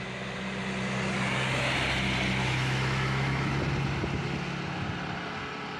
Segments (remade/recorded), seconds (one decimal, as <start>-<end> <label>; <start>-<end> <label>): 0.0-2.4 recorded; 2.4-3.5 remade; 3.5-5.8 recorded